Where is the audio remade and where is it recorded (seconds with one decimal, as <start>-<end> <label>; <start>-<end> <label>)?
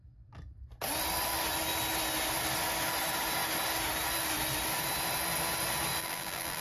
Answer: 0.0-6.0 recorded; 6.0-6.6 remade